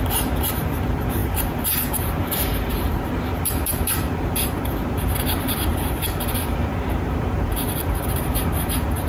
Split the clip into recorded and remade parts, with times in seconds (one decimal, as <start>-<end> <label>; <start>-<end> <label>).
0.0-9.1 remade